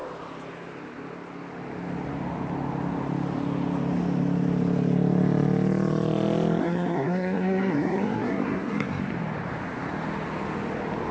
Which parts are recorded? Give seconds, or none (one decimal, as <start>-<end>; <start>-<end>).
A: 0.0-6.6; 9.0-11.1